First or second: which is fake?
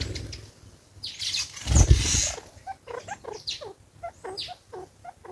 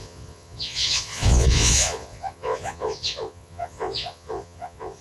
second